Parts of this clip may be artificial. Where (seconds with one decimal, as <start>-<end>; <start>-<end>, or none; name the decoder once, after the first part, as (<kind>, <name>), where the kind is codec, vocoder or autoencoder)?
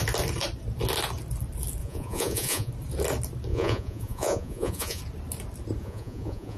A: 1.8-2.7 (vocoder, Vocos); 3.5-5.0; 5.8-6.6